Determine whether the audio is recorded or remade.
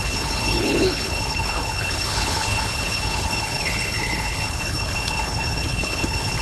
remade